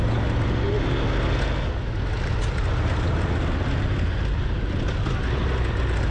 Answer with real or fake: real